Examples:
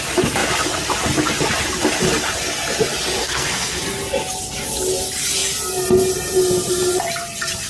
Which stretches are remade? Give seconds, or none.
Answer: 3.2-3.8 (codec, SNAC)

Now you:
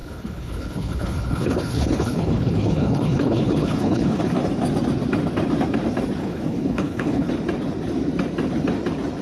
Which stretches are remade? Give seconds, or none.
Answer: 0.0-4.3 (codec, HILCodec); 6.2-7.3

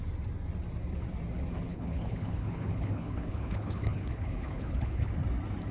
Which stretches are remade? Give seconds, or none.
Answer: 1.7-5.1 (codec, HILCodec)